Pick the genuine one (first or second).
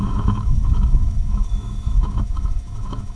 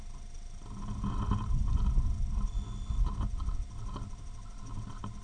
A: second